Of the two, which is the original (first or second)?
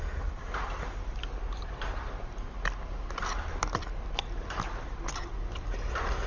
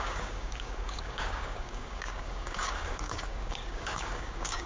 first